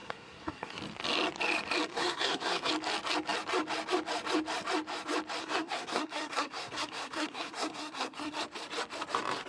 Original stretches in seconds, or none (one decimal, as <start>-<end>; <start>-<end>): 0.8-1.9; 2.7-5.4; 8.4-9.5